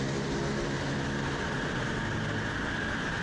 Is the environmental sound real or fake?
real